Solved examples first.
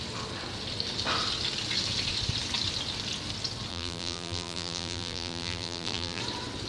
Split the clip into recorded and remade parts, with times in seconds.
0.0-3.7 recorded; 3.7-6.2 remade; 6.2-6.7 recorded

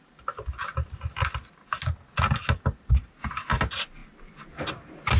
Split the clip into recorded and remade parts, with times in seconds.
0.0-5.2 recorded